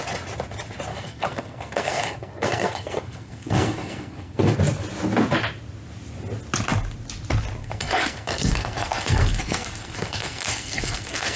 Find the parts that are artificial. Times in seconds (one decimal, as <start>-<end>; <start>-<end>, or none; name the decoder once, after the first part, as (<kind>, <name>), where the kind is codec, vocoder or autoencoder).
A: 0.9-4.6 (codec, SNAC); 7.6-11.4